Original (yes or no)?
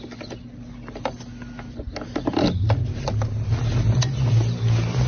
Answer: yes